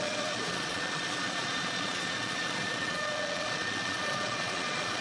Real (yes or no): no